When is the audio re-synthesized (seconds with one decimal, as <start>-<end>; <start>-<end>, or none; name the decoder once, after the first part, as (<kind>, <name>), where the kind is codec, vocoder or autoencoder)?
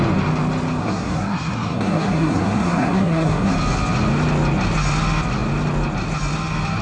0.8-3.5 (codec, SNAC)